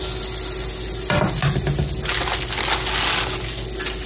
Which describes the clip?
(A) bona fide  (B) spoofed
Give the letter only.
A